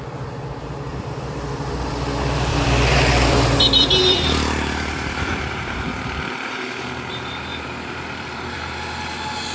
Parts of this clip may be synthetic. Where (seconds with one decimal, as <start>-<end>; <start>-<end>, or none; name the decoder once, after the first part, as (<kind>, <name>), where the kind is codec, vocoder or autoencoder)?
0.9-1.9 (vocoder, BigVGAN v2); 2.5-6.7; 7.5-9.0